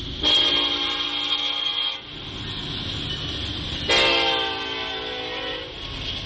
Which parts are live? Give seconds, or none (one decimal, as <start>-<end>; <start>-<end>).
0.0-6.3